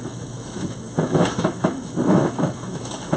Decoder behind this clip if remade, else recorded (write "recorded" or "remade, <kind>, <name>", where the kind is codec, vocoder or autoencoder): remade, autoencoder, DAC-VAE